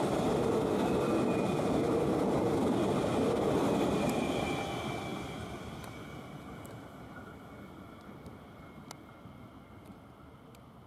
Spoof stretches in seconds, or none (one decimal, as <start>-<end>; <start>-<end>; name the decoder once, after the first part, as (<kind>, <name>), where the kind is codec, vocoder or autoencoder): 5.1-5.7 (vocoder, BigVGAN v2)